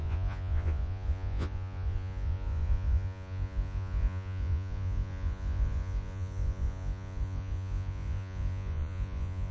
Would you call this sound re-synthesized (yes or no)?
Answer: yes